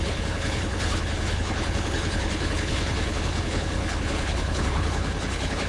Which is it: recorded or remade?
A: remade